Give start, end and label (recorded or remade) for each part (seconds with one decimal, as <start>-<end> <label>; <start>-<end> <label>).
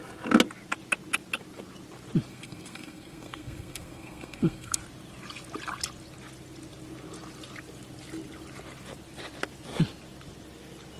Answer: 0.0-2.3 recorded; 2.3-4.8 remade; 4.8-11.0 recorded